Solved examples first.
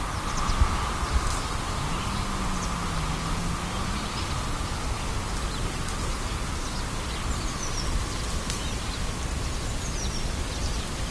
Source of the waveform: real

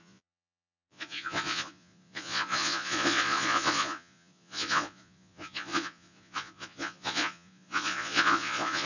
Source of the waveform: fake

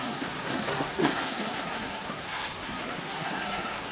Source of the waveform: fake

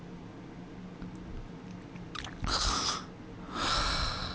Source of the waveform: real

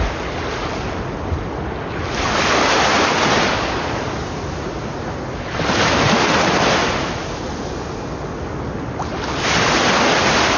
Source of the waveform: real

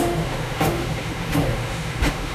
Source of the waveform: fake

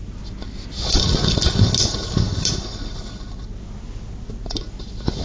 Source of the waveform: real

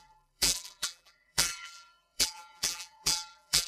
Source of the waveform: fake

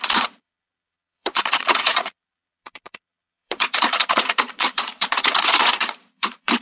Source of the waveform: fake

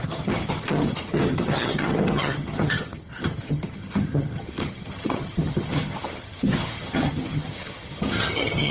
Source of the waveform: fake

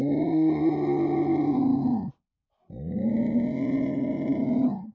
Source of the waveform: real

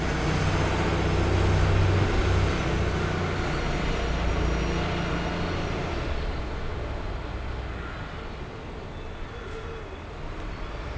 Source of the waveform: real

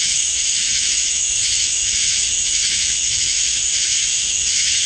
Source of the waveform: fake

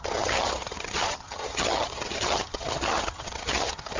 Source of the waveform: fake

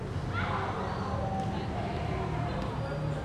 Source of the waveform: real